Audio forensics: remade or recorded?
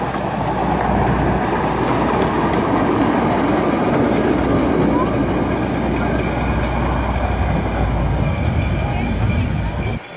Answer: recorded